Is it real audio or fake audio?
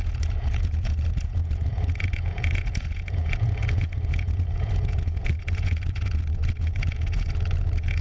fake